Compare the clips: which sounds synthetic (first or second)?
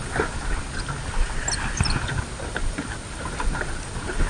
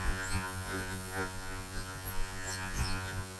second